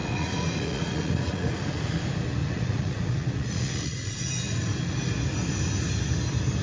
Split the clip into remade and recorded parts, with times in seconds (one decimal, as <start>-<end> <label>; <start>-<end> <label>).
0.0-2.0 remade; 2.0-2.4 recorded; 2.4-4.3 remade; 4.3-6.6 recorded